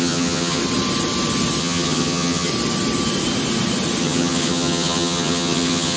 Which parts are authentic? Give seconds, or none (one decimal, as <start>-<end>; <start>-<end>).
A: 0.6-1.6; 2.5-4.0